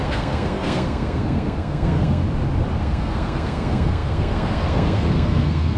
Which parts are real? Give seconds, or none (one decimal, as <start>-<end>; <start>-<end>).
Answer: 2.2-2.8